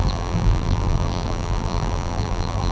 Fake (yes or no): yes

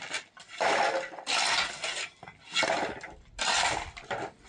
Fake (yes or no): no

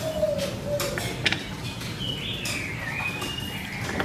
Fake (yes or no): no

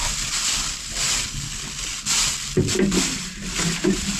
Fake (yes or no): no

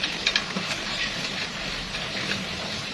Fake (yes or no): yes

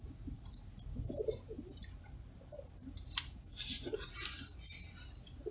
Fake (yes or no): no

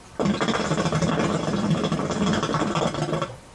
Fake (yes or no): yes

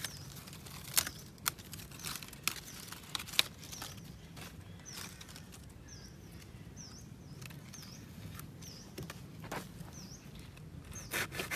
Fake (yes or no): no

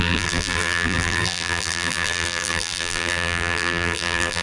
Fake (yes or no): yes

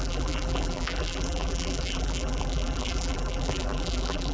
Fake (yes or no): yes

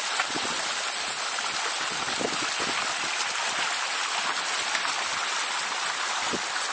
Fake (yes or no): no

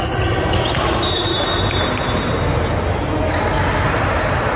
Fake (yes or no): no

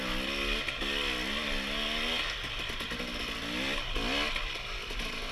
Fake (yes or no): no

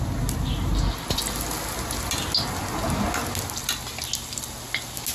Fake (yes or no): no